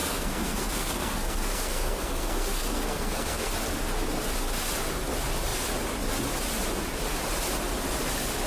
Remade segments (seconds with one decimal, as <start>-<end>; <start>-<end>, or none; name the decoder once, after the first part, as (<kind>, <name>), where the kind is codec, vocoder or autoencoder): 0.0-3.5 (codec, SNAC)